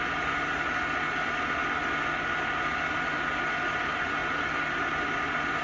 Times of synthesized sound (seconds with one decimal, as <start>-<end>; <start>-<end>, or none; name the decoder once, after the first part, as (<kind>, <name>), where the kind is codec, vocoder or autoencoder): none

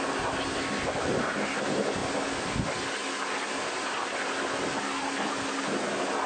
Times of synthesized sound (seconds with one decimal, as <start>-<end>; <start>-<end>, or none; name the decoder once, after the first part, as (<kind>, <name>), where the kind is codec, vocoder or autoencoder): none

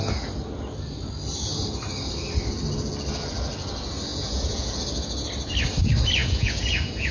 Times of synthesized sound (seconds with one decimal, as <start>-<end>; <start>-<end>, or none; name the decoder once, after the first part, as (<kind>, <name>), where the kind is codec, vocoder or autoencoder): 4.1-4.7 (vocoder, Vocos); 6.2-7.1

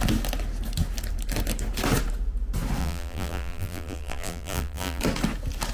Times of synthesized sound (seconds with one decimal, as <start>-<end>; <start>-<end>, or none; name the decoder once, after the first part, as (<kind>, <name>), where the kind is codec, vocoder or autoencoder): 2.8-5.0 (vocoder, BigVGAN v2)

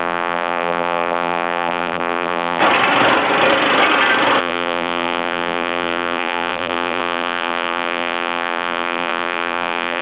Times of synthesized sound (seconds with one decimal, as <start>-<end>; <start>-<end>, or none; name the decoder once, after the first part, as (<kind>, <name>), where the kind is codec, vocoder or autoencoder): 0.0-2.6 (vocoder, BigVGAN v2); 4.4-10.0

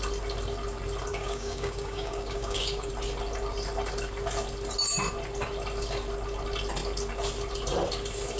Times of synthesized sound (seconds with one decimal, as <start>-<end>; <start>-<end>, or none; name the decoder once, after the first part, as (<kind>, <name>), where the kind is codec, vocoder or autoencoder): 1.1-2.9 (codec, DAC)